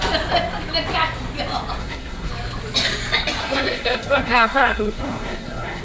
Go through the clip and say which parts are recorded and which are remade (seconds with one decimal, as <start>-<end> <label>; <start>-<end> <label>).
0.0-1.8 recorded; 1.8-2.3 remade; 2.3-3.4 recorded; 3.4-5.8 remade